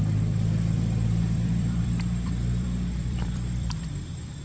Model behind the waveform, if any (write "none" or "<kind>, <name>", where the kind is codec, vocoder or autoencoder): vocoder, BigVGAN v2